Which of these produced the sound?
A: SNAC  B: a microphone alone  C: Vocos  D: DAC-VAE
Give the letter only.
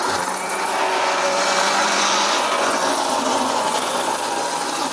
C